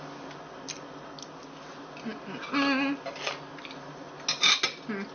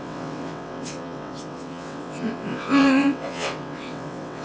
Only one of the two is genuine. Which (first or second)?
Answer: first